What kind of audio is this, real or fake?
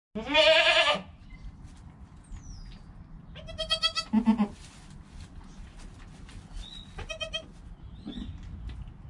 real